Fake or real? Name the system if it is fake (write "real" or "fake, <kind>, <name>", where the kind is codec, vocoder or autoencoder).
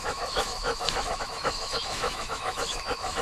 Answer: fake, autoencoder, DAC-VAE